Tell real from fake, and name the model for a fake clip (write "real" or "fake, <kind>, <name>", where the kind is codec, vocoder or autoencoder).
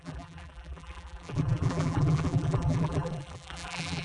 fake, vocoder, BigVGAN v2